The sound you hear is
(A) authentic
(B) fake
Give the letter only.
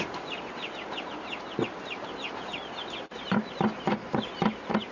A